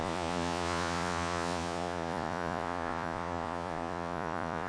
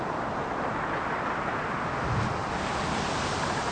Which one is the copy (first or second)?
first